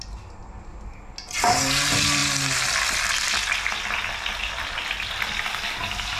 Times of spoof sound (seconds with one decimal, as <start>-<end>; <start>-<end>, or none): none